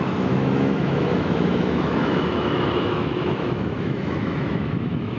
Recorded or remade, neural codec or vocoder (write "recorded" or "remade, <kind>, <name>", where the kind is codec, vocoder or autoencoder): remade, autoencoder, DAC-VAE